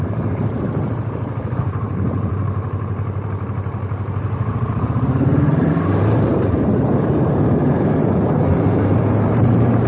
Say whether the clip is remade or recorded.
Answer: remade